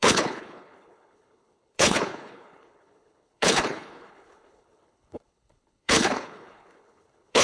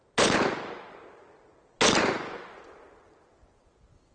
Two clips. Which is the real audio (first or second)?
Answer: second